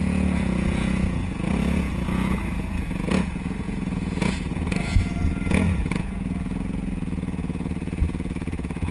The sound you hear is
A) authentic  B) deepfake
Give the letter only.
B